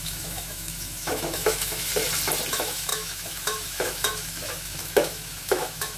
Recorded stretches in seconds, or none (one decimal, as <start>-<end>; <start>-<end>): 1.9-2.5